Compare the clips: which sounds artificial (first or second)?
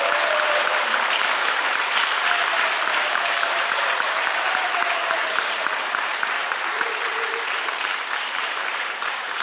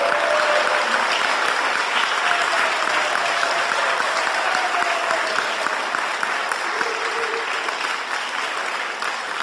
first